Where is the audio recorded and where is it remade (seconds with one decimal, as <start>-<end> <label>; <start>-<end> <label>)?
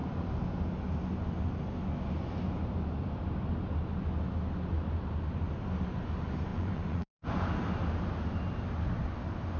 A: 0.0-6.5 recorded; 6.5-7.4 remade; 7.4-9.6 recorded